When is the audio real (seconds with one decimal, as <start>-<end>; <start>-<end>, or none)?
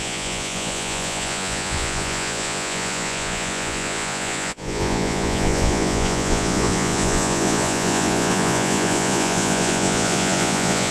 none